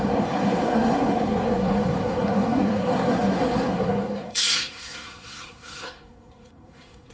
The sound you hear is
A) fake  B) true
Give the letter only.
A